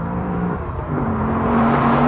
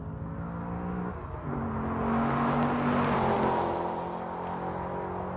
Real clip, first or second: second